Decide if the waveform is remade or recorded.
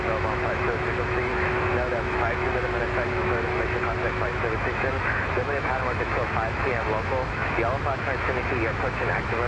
remade